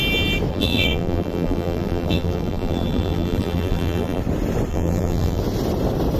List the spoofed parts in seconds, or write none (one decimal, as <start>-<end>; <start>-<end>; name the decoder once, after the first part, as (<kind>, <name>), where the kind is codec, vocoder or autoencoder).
0.5-4.2 (vocoder, BigVGAN v2); 4.7-5.4